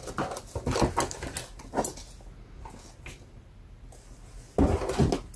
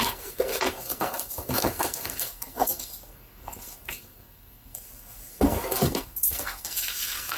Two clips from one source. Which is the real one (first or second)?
first